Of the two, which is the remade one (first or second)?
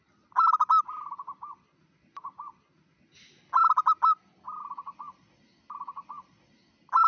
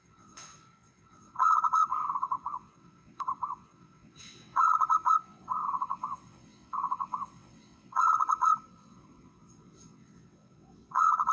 second